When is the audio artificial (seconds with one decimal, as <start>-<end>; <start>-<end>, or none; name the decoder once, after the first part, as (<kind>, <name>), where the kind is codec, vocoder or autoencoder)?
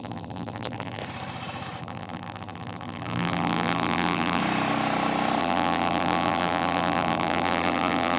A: 0.0-1.0 (vocoder, BigVGAN v2); 1.8-4.4; 5.4-8.2